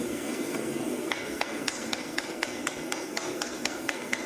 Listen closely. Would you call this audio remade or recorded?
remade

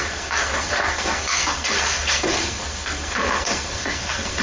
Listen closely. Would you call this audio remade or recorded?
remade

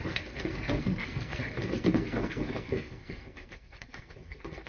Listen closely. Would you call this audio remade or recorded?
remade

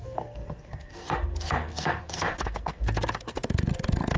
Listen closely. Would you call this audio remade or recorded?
remade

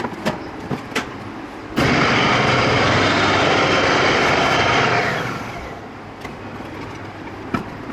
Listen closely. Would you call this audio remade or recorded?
recorded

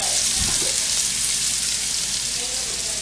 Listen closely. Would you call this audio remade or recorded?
recorded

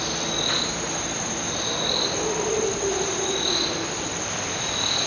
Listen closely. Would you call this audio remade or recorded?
recorded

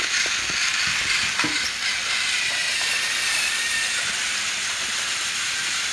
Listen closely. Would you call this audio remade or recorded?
recorded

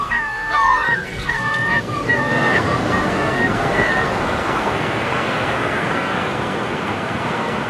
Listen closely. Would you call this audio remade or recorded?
remade